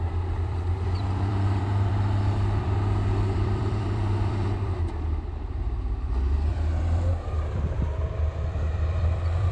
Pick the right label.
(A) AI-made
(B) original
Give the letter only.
A